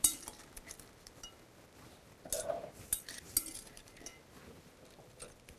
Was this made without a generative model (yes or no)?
yes